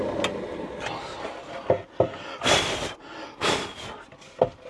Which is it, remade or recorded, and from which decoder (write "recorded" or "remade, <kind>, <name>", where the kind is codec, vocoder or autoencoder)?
recorded